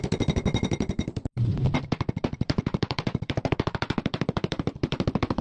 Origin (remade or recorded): remade